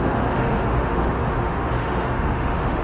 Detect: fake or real fake